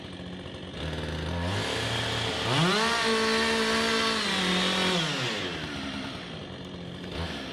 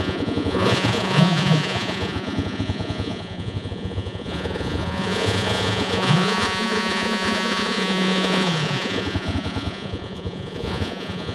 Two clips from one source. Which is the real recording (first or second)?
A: first